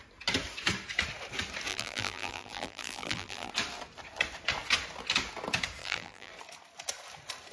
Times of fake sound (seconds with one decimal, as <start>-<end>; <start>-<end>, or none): 1.7-3.5; 5.8-6.3